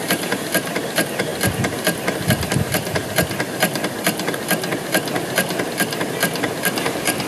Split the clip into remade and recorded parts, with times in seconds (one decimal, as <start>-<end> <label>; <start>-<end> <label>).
0.0-7.3 recorded